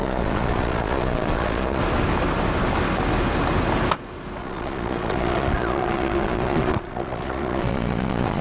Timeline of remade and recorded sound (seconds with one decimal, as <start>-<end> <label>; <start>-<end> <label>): 0.0-1.8 remade; 1.8-4.4 recorded; 4.4-8.4 remade